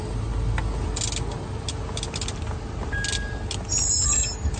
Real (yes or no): yes